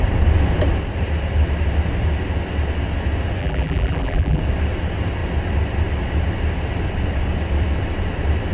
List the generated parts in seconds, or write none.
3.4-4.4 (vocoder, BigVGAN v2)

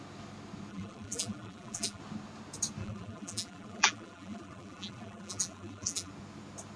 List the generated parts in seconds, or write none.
0.7-2.0 (vocoder, BigVGAN v2); 2.8-6.1